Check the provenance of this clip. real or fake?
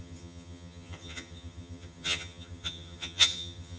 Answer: fake